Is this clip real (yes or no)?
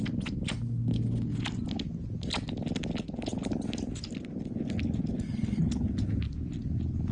yes